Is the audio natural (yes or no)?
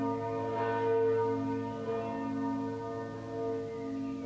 yes